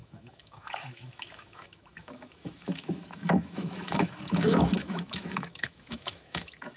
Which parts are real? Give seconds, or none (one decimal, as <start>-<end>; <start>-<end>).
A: none